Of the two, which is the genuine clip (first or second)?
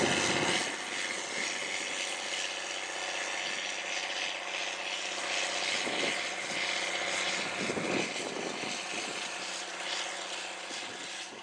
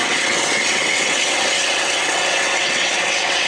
first